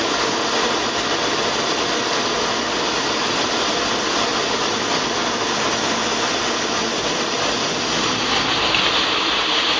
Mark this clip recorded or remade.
recorded